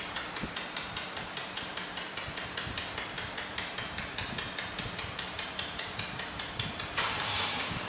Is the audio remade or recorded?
remade